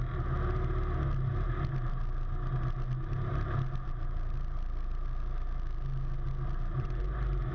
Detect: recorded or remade recorded